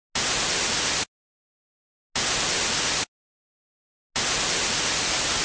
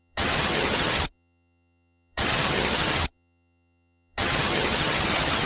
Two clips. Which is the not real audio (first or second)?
second